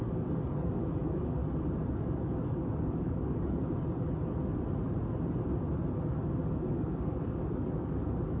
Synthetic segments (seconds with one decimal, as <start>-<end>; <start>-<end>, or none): 0.0-1.4; 1.9-3.6; 6.7-8.4